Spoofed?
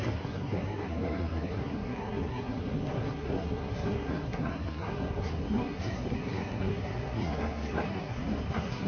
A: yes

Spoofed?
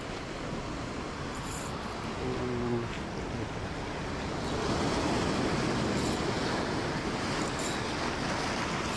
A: no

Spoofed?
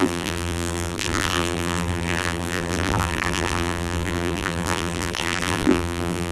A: yes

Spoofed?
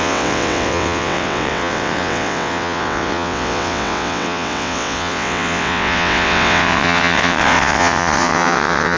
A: yes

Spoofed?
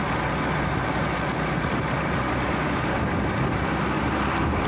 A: no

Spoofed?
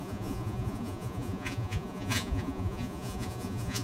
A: yes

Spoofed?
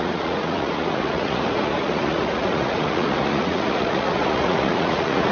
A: yes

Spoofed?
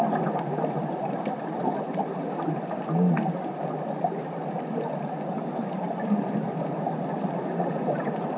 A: no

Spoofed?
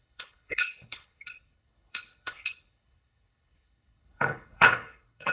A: yes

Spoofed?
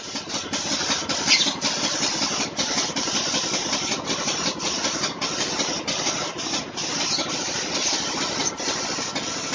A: no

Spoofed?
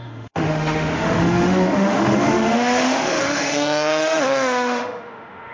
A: yes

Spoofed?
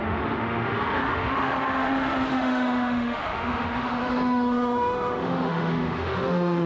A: yes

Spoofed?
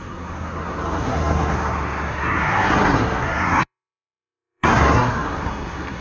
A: yes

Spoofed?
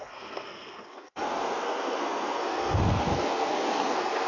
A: yes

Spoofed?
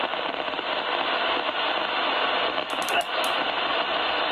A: no